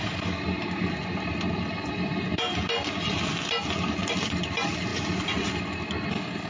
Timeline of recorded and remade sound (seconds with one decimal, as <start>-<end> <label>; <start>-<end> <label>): 0.0-6.5 recorded